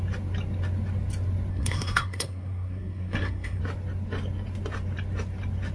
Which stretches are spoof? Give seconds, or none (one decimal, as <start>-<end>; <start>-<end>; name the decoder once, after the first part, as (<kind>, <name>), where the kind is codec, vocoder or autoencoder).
1.5-3.6 (codec, SNAC)